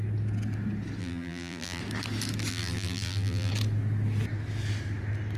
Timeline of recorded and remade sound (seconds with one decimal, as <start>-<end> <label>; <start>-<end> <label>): 0.0-1.0 recorded; 1.0-1.8 remade; 1.8-2.5 recorded; 2.5-3.5 remade; 3.5-5.4 recorded